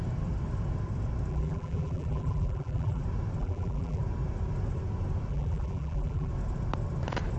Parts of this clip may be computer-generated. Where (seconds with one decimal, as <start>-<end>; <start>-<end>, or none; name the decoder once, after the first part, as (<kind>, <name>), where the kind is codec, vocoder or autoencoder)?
1.3-3.0 (vocoder, BigVGAN v2); 3.4-4.0; 5.3-6.3